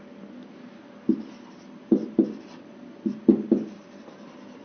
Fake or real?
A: real